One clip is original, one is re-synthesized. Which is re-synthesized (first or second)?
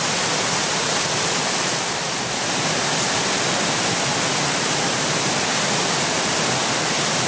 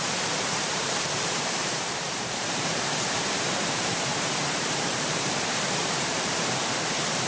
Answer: second